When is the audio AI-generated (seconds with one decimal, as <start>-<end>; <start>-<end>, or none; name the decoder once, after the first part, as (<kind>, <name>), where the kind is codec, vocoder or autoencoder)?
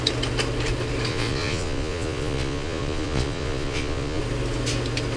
1.1-4.2 (vocoder, Vocos)